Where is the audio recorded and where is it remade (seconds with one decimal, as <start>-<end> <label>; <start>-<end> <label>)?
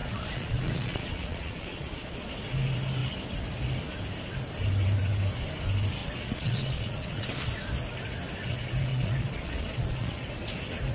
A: 0.0-2.3 remade; 2.3-6.0 recorded; 6.0-7.5 remade; 7.5-8.9 recorded; 8.9-10.3 remade; 10.3-10.9 recorded